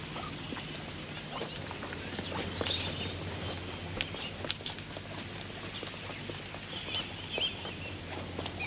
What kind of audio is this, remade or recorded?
recorded